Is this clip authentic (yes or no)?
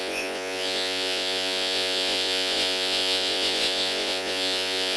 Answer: no